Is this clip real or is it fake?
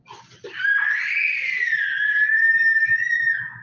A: real